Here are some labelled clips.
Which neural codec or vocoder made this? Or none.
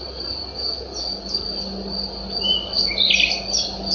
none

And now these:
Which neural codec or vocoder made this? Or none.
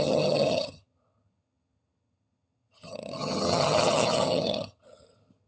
vocoder, HiFi-GAN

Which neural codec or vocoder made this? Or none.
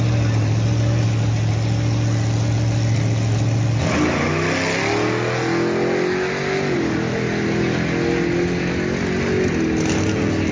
none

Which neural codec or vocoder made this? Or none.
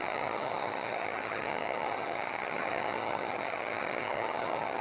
vocoder, HiFi-GAN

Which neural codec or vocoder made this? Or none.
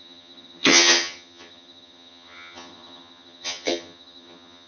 vocoder, HiFi-GAN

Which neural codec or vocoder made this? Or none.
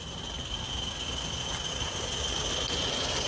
none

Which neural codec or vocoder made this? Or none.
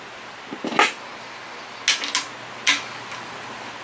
none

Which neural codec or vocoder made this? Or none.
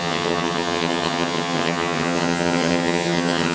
vocoder, HiFi-GAN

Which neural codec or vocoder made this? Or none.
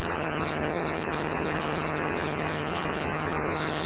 vocoder, HiFi-GAN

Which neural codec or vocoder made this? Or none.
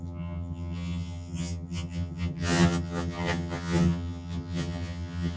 vocoder, HiFi-GAN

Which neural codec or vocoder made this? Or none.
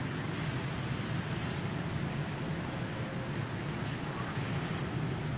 none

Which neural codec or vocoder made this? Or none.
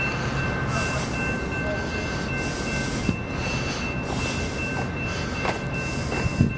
none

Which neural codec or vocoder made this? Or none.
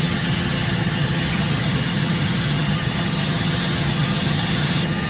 vocoder, HiFi-GAN